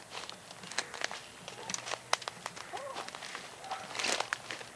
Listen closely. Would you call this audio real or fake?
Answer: real